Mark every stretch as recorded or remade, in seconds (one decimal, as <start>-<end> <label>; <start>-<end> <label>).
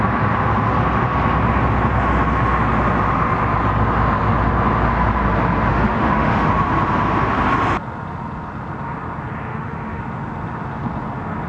0.0-5.7 recorded; 5.7-6.5 remade; 6.5-9.5 recorded; 9.5-10.0 remade; 10.0-11.5 recorded